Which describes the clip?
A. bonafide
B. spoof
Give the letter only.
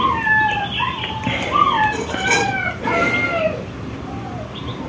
A